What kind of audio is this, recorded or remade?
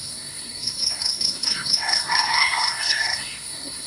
remade